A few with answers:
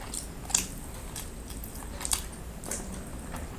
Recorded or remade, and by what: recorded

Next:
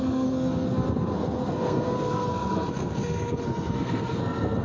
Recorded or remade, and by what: remade, codec, SNAC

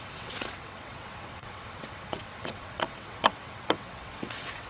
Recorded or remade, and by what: remade, vocoder, WaveNeXt